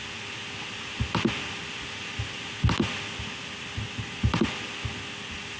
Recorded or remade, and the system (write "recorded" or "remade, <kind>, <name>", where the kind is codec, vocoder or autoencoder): recorded